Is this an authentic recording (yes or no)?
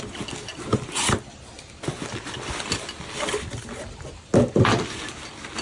yes